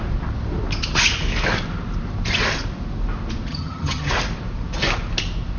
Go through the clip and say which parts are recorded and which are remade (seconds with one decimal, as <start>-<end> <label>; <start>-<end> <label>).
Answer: 0.0-3.5 recorded; 3.5-4.1 remade; 4.1-5.6 recorded